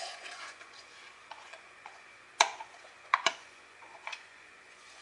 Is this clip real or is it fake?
fake